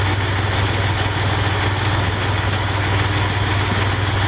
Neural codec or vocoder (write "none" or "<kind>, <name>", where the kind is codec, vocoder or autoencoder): none